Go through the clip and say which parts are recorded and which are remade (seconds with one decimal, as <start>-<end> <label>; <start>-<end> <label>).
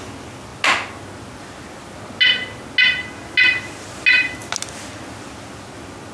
0.0-6.1 recorded